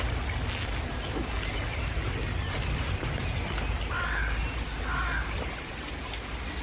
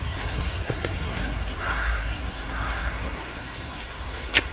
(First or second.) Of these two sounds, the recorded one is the first